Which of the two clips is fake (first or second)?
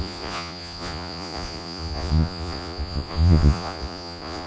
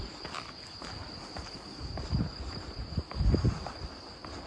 first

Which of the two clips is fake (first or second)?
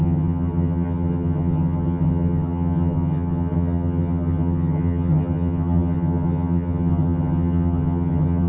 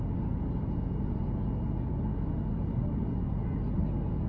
first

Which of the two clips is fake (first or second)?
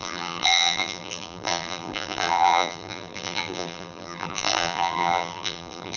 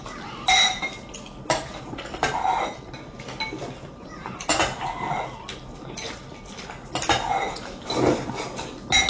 first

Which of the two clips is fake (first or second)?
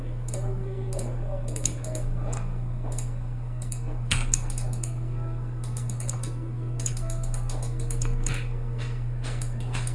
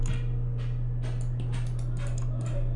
first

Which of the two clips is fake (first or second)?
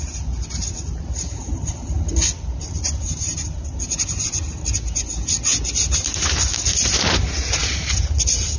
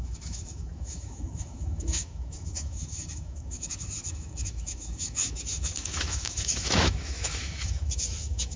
second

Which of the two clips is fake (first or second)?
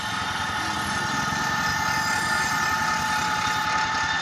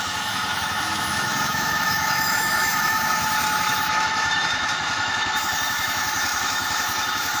second